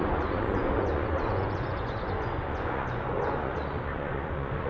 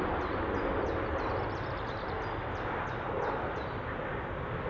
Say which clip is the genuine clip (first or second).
second